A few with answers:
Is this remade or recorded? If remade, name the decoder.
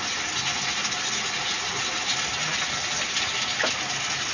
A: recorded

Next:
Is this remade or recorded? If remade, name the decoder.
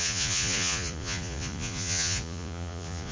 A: remade, vocoder, Vocos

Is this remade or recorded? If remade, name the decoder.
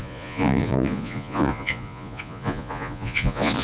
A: remade, vocoder, Vocos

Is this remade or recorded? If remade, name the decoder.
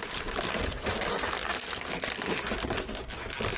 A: recorded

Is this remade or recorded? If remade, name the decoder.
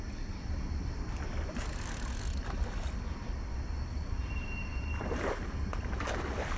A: recorded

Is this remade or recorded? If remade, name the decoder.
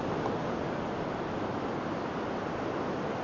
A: recorded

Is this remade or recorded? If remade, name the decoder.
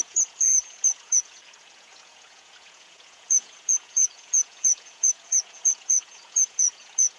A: remade, vocoder, Vocos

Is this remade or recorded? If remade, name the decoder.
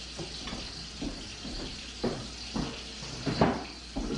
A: recorded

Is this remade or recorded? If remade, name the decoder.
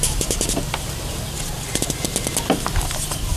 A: recorded